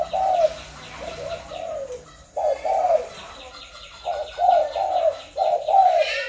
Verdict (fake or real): fake